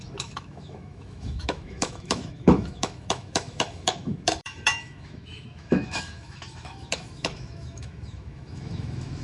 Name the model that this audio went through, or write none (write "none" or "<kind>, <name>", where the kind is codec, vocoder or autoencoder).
autoencoder, DAC-VAE